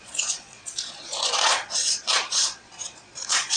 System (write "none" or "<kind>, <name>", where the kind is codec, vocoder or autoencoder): vocoder, Vocos